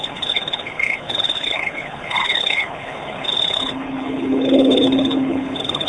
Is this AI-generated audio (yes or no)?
yes